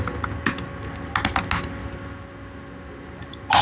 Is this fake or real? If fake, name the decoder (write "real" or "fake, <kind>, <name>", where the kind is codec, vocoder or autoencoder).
real